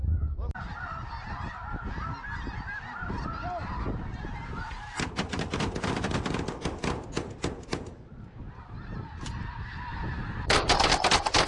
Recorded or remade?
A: recorded